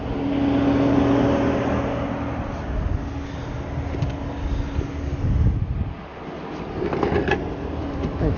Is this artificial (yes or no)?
no